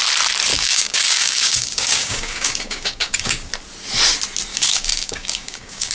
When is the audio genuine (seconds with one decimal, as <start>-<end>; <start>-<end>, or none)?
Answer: 0.0-0.5; 3.5-4.5